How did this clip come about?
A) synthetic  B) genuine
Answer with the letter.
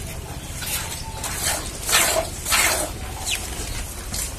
A